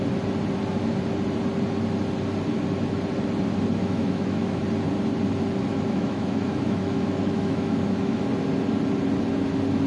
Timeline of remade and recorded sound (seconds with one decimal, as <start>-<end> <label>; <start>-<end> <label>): 0.0-3.8 recorded; 3.8-4.6 remade; 4.6-5.7 recorded; 5.7-8.2 remade; 8.2-9.9 recorded